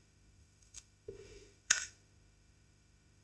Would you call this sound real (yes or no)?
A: no